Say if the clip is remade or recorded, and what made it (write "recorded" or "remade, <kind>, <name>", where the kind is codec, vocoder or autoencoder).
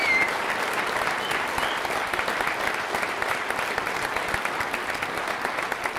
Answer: recorded